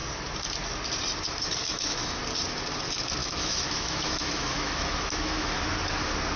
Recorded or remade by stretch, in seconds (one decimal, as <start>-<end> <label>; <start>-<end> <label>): 0.0-1.6 recorded; 1.6-2.2 remade; 2.2-3.2 recorded; 3.2-5.6 remade; 5.6-6.4 recorded